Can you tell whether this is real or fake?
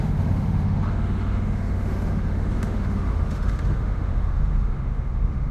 fake